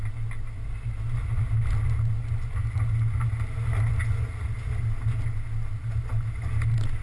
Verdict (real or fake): real